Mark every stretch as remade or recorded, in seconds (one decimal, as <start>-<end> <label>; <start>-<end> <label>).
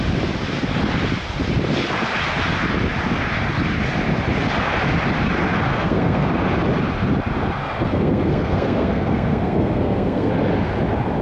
0.0-5.7 recorded; 5.7-6.3 remade; 6.3-7.6 recorded; 7.6-10.3 remade; 10.3-11.2 recorded